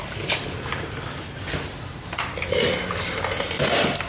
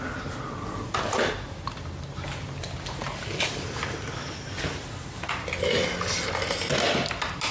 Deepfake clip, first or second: first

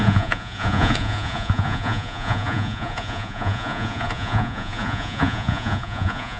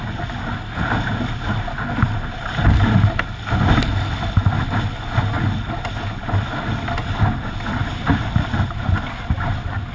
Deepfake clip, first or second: first